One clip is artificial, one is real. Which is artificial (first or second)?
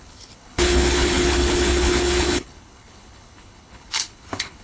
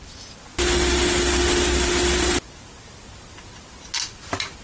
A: first